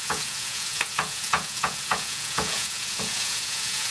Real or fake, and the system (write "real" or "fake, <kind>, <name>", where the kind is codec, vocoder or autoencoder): fake, vocoder, Vocos